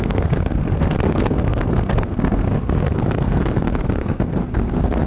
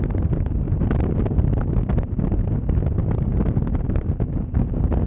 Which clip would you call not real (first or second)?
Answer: first